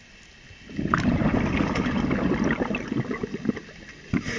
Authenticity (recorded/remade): recorded